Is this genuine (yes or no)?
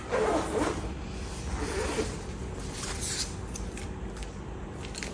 yes